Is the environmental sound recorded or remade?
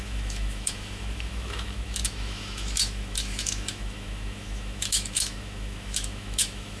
remade